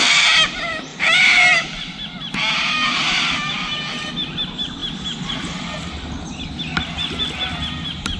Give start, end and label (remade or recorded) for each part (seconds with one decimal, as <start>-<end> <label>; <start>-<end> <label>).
0.0-8.2 recorded